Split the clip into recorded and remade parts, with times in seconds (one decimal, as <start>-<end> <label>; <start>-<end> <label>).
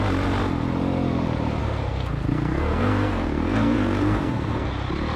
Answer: 0.0-1.6 recorded; 1.6-4.7 remade; 4.7-5.2 recorded